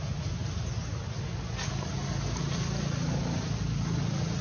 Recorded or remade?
recorded